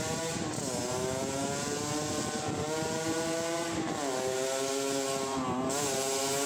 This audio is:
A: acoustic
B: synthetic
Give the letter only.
A